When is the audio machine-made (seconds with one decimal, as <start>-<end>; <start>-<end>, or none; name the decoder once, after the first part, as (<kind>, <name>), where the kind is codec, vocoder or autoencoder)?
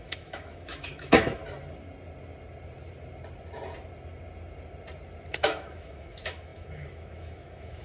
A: 0.0-1.4 (autoencoder, DAC-VAE); 5.3-7.8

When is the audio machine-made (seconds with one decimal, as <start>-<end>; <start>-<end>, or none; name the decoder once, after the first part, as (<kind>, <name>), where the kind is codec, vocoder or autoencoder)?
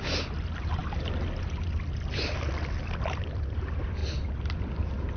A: none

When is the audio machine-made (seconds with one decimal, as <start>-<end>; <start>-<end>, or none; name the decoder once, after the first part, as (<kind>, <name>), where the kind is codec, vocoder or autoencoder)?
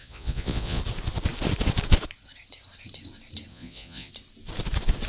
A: 0.0-0.8 (vocoder, Vocos); 3.5-4.1